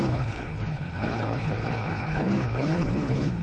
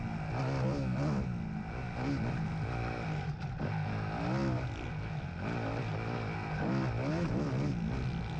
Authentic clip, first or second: second